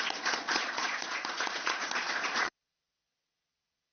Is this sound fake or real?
fake